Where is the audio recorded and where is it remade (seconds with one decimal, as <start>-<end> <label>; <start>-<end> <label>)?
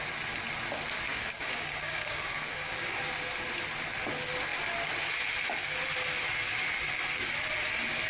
0.0-1.1 recorded; 1.1-3.0 remade; 3.0-8.1 recorded